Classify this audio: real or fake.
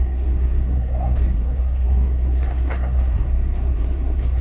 fake